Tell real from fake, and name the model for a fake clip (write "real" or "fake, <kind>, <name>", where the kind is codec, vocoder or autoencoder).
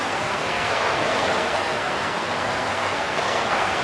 fake, codec, SNAC